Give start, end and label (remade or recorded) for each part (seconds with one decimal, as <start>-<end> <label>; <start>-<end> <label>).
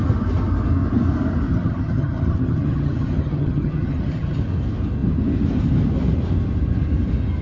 0.0-1.5 recorded; 1.5-4.4 remade; 4.4-7.4 recorded